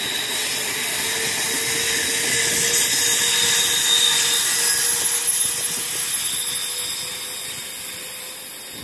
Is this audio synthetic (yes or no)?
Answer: no